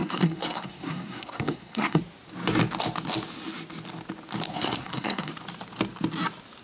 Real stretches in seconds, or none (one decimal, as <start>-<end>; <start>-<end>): 2.0-4.5; 5.3-6.6